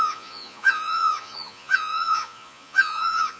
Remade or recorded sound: remade